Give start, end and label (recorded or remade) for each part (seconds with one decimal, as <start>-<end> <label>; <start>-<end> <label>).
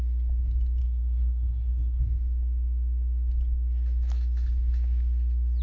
0.0-0.8 recorded; 0.8-2.0 remade; 2.0-5.6 recorded